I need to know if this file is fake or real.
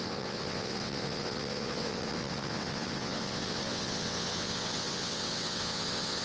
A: fake